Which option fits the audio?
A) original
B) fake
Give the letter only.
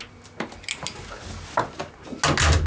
A